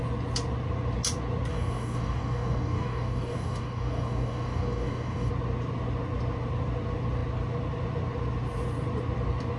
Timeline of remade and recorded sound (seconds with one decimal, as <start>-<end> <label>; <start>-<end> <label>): 0.0-1.5 recorded; 1.5-5.3 remade; 5.3-9.6 recorded

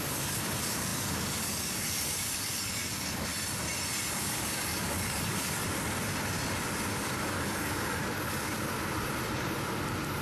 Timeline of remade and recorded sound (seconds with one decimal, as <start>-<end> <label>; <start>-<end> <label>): 0.0-3.3 remade; 3.3-4.1 recorded; 4.1-5.6 remade; 5.6-6.9 recorded; 6.9-8.0 remade; 8.0-10.2 recorded

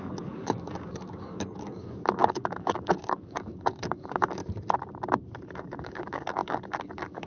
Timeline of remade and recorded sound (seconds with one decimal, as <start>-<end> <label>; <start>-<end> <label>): 0.0-4.4 remade; 4.4-5.6 recorded; 5.6-7.3 remade

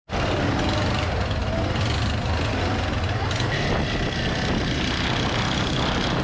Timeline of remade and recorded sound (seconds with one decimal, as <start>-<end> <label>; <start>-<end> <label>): 0.0-6.2 recorded

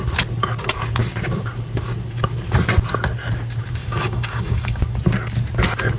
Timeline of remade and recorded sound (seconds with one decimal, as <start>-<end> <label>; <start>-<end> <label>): 0.0-3.8 recorded; 3.8-4.8 remade; 4.8-6.0 recorded

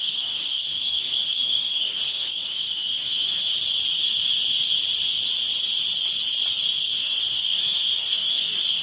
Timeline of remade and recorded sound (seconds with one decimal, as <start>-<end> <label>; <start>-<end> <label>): 0.0-3.5 remade; 3.5-6.8 recorded; 6.8-8.8 remade

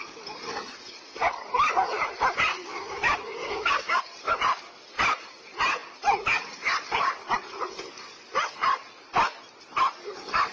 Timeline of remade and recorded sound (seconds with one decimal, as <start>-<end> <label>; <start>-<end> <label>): 0.0-2.5 recorded; 2.5-4.0 remade; 4.0-10.5 recorded

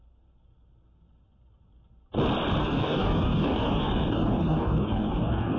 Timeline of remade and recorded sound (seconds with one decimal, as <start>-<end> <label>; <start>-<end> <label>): 0.0-2.6 recorded; 2.6-5.6 remade